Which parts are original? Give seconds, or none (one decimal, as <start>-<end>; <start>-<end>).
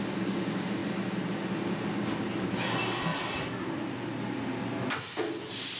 0.0-5.8